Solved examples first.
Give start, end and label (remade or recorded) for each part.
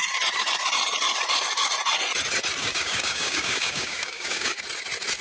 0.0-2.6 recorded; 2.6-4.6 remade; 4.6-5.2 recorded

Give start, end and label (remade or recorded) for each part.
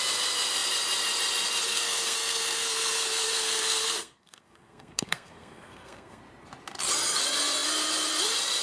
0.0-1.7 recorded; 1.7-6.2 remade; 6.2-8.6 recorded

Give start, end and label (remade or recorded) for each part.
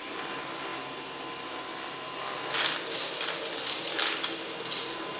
0.0-5.2 recorded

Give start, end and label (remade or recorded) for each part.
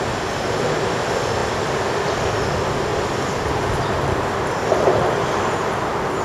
0.0-2.9 recorded; 2.9-3.7 remade; 3.7-6.2 recorded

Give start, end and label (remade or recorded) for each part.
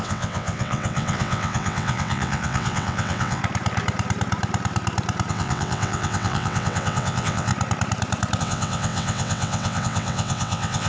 0.0-3.4 remade; 3.4-5.3 recorded; 5.3-7.5 remade; 7.5-8.4 recorded; 8.4-10.9 remade